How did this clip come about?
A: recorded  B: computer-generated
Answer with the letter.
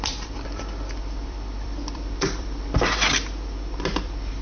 B